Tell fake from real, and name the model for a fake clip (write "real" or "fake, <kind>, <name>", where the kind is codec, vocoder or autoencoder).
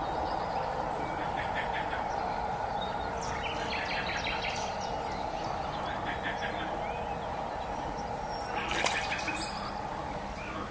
real